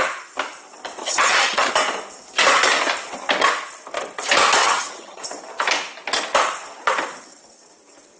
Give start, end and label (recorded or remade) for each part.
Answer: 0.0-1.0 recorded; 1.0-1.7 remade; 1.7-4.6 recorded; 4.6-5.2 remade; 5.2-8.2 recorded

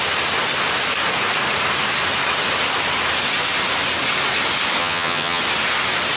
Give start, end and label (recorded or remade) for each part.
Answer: 0.0-4.8 recorded; 4.8-5.4 remade; 5.4-6.2 recorded

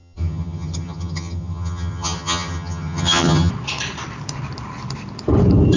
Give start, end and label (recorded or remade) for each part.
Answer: 0.0-3.5 remade; 3.5-5.8 recorded

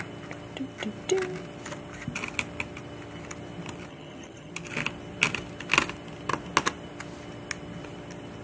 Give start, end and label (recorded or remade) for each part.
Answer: 0.0-3.9 recorded; 3.9-4.5 remade; 4.5-8.4 recorded

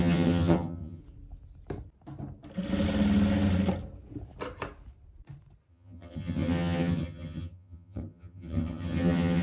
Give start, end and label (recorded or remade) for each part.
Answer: 0.0-1.0 remade; 1.0-5.7 recorded; 5.7-9.4 remade